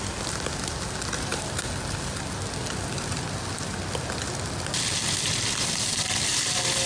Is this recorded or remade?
recorded